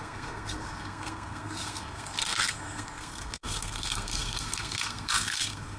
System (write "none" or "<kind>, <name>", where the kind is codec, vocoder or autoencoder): codec, SNAC